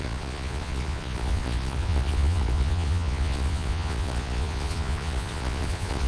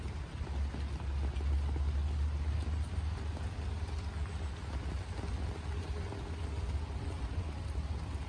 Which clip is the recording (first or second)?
second